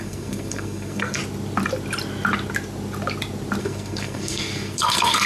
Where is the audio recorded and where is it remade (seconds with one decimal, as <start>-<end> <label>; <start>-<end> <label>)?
0.0-1.2 remade; 1.2-3.6 recorded; 3.6-5.3 remade

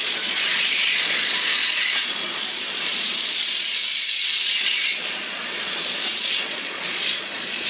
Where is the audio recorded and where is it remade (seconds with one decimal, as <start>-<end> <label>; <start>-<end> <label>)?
0.0-7.7 remade

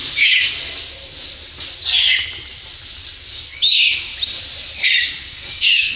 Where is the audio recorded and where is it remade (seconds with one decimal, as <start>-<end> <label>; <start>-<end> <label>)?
0.0-3.3 recorded; 3.3-4.1 remade; 4.1-5.2 recorded; 5.2-6.0 remade

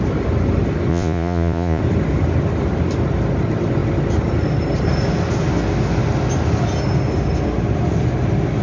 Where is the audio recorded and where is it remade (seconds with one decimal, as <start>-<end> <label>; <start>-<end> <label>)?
0.0-0.9 recorded; 0.9-1.8 remade; 1.8-8.6 recorded

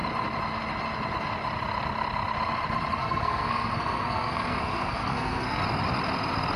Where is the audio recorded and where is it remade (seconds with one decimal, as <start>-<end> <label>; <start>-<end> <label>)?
0.0-3.0 recorded; 3.0-5.6 remade; 5.6-6.6 recorded

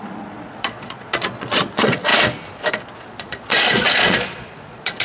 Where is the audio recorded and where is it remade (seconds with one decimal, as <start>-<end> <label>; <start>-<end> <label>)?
0.0-2.1 remade; 2.1-2.7 recorded; 2.7-5.0 remade

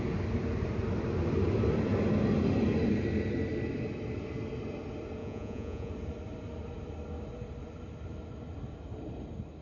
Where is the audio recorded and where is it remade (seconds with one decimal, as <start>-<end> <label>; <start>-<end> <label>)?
0.0-5.2 recorded; 5.2-5.9 remade; 5.9-9.6 recorded